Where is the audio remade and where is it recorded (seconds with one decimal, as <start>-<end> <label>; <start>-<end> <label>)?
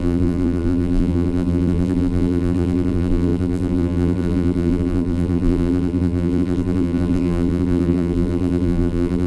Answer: 0.0-9.3 remade